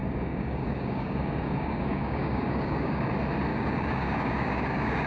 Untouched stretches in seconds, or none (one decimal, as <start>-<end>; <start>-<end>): 3.1-3.5